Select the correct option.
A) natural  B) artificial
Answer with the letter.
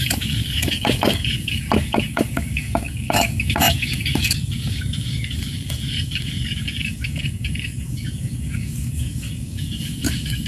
B